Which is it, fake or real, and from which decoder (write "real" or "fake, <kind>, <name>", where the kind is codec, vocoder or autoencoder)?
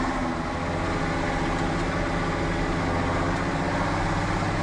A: real